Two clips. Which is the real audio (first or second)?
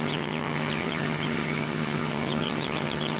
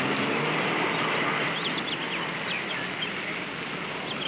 second